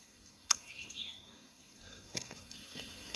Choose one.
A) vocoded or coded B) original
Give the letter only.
A